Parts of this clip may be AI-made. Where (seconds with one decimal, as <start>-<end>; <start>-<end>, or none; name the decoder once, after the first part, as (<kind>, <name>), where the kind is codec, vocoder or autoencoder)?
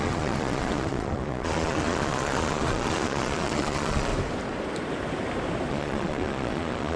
0.0-4.1 (vocoder, Vocos); 5.7-7.0